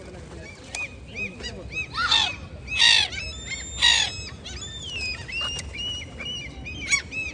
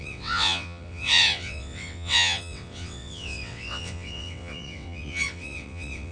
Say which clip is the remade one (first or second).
second